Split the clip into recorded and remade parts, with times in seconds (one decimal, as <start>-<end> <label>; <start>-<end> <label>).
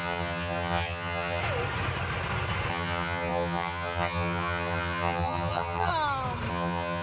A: 0.0-1.4 remade; 1.4-2.7 recorded; 2.7-5.9 remade; 5.9-6.5 recorded; 6.5-7.0 remade